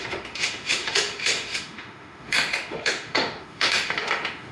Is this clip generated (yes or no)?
yes